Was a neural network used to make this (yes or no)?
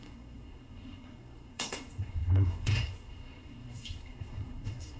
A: yes